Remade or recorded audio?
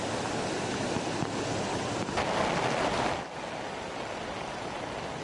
recorded